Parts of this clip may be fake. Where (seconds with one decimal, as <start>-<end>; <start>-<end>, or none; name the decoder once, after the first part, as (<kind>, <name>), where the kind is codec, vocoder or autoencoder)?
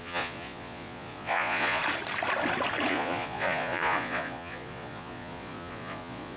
0.0-1.8 (vocoder, Vocos); 2.9-6.4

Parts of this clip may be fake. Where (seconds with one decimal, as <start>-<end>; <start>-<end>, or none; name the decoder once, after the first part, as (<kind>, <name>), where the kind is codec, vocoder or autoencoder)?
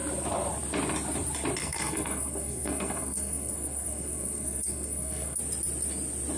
1.6-5.4 (codec, SNAC)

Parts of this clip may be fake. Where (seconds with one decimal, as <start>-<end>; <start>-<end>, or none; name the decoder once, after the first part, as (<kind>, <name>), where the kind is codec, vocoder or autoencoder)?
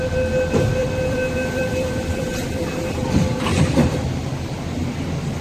0.8-4.0 (vocoder, BigVGAN v2)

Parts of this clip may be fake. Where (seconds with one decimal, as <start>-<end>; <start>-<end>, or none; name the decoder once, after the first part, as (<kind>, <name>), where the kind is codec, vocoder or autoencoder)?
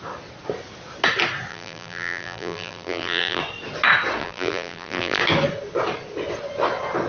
1.5-3.4 (vocoder, BigVGAN v2); 4.2-5.2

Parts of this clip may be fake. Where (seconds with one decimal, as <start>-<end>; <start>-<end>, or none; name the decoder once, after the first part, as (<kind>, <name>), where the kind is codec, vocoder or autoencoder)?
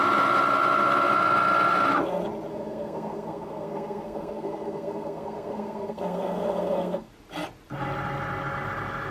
2.5-7.1 (codec, SNAC)